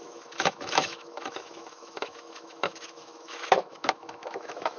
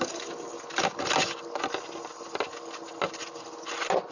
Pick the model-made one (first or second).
first